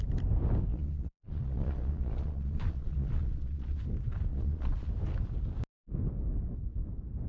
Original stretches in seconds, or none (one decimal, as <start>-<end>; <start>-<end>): 0.0-0.7; 3.8-4.3; 4.9-7.3